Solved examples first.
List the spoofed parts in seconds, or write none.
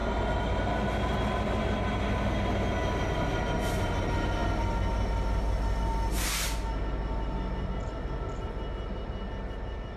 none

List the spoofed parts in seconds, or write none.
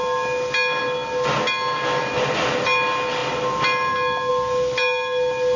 none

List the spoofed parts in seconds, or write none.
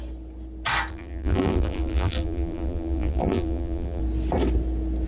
0.9-4.0 (vocoder, BigVGAN v2)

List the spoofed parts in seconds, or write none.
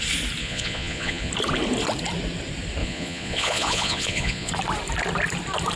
0.4-1.3 (vocoder, Vocos); 2.8-4.5